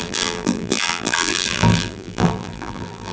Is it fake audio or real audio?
fake